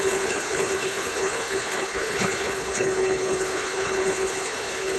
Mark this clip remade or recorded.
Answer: remade